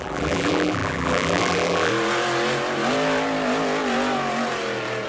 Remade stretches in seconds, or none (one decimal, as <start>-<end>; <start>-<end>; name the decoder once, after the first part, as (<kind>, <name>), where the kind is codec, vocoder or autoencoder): 0.0-1.9 (vocoder, BigVGAN v2)